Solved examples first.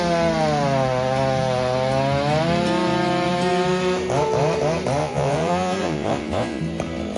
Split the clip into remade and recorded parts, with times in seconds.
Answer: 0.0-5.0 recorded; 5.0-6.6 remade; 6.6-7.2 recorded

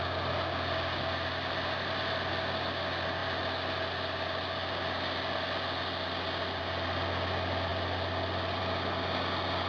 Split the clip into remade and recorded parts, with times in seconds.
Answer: 0.0-9.7 recorded

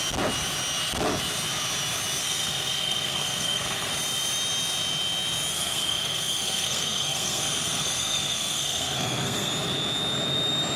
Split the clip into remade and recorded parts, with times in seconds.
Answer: 0.0-2.2 recorded; 2.2-3.9 remade; 3.9-5.5 recorded; 5.5-9.5 remade; 9.5-10.8 recorded

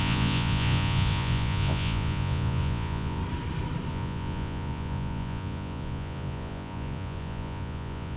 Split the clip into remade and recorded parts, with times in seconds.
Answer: 0.0-3.2 remade; 3.2-3.9 recorded; 3.9-8.2 remade

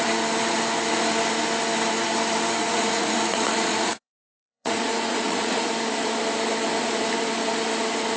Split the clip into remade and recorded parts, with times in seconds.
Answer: 0.0-2.6 recorded; 2.6-5.7 remade; 5.7-8.2 recorded

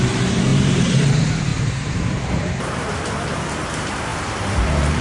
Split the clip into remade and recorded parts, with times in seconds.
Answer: 0.0-5.0 remade

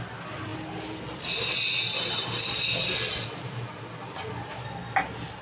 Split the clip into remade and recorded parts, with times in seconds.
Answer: 0.0-5.4 recorded